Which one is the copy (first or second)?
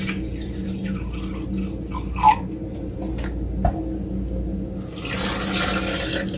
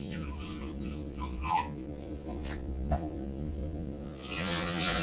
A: second